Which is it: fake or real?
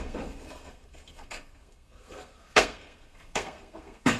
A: fake